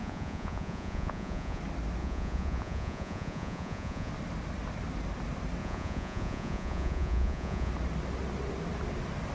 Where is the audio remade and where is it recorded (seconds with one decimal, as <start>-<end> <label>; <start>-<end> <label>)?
0.0-1.6 remade; 1.6-2.0 recorded; 2.0-4.1 remade; 4.1-5.6 recorded; 5.6-7.7 remade; 7.7-9.3 recorded